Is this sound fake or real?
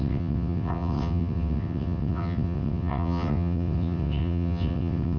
fake